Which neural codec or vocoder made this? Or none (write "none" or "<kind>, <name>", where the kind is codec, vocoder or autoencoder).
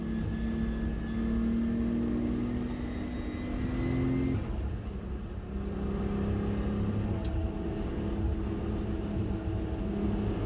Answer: none